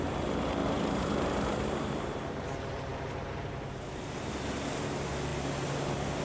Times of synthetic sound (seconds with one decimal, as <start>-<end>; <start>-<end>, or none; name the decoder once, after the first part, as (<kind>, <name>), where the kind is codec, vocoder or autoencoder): 0.6-4.3 (vocoder, BigVGAN v2)